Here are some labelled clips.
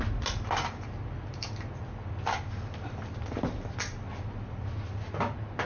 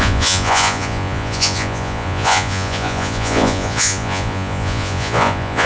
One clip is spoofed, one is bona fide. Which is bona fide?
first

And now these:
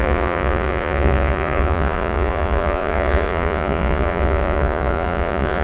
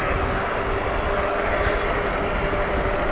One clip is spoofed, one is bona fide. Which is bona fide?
second